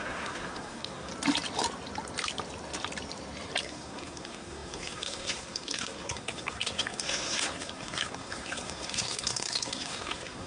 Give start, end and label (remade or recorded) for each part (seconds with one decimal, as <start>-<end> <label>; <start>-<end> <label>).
0.0-1.1 remade; 1.1-3.6 recorded; 3.6-10.5 remade